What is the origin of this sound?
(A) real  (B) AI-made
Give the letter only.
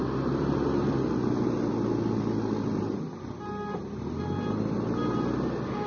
A